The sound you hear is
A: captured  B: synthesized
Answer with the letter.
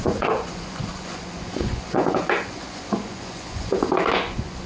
B